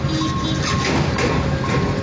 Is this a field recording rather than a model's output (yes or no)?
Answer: yes